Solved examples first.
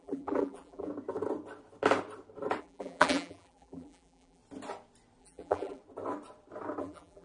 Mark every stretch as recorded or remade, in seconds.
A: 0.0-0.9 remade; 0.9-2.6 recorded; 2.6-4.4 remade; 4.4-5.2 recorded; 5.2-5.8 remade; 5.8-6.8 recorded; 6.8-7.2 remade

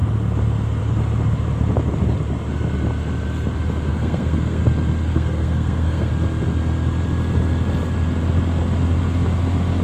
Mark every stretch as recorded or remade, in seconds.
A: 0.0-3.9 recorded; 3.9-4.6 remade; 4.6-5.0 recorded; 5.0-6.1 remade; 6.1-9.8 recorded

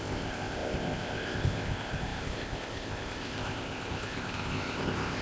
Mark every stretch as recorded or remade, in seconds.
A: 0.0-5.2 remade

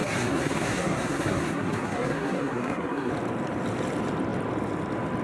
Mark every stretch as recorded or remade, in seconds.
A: 0.0-3.1 remade; 3.1-5.2 recorded

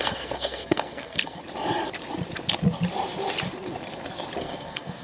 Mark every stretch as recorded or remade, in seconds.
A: 0.0-1.4 remade; 1.4-4.4 recorded; 4.4-5.0 remade

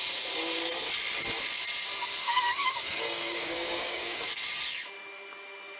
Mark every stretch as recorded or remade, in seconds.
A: 0.0-2.2 recorded; 2.2-4.3 remade; 4.3-5.8 recorded

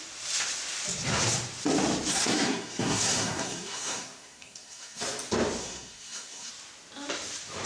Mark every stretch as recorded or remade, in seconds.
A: 0.0-2.1 recorded; 2.1-5.0 remade; 5.0-5.6 recorded; 5.6-6.5 remade; 6.5-7.7 recorded